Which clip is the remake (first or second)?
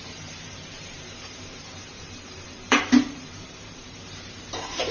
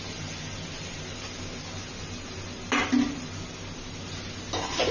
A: first